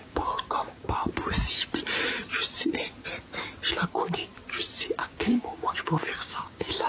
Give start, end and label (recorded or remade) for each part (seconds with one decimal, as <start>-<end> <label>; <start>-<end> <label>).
0.0-1.0 remade; 1.0-3.7 recorded; 3.7-4.3 remade; 4.3-5.0 recorded; 5.0-6.9 remade

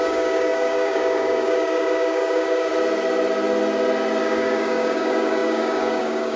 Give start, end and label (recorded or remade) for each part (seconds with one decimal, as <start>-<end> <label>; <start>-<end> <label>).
0.0-2.7 remade; 2.7-4.2 recorded; 4.2-6.4 remade

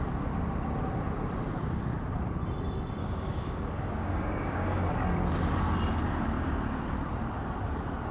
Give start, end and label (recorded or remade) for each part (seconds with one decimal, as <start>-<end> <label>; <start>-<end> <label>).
0.0-3.0 recorded; 3.0-4.9 remade; 4.9-8.1 recorded

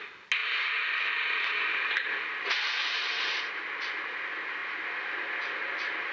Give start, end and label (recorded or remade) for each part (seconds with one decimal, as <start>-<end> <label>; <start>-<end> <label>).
0.0-6.1 recorded

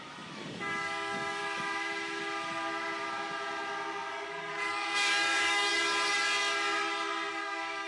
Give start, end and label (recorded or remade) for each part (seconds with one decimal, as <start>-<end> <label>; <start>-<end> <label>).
0.0-1.4 remade; 1.4-4.1 recorded; 4.1-5.7 remade; 5.7-7.3 recorded; 7.3-7.9 remade

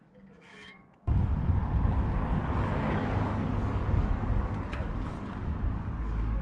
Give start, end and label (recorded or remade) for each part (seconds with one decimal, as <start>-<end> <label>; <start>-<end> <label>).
0.0-6.4 remade